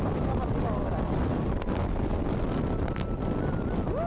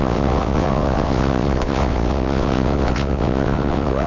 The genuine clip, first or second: first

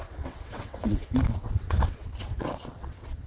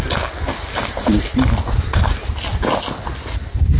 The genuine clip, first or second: second